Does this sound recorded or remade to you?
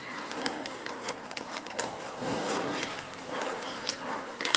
remade